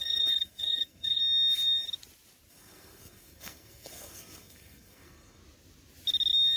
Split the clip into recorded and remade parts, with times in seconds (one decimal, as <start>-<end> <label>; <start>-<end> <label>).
0.0-1.2 remade; 1.2-2.5 recorded; 2.5-5.4 remade; 5.4-6.6 recorded